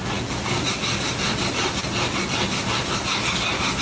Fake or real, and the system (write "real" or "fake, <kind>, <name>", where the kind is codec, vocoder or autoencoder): real